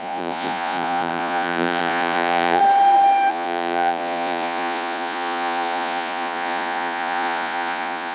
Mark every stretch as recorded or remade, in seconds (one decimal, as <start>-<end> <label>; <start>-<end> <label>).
0.0-2.6 remade; 2.6-3.3 recorded; 3.3-8.1 remade